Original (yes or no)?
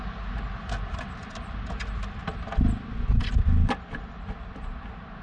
yes